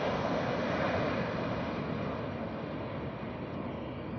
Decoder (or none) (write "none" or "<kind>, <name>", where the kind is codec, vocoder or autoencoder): none